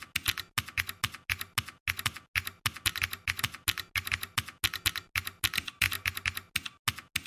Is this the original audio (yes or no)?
yes